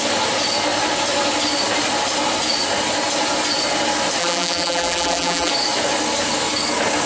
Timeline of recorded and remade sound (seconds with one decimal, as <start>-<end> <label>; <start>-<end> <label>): 0.0-4.2 recorded; 4.2-5.5 remade; 5.5-7.1 recorded